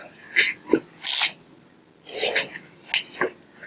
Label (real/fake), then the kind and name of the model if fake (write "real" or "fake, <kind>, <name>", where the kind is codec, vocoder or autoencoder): real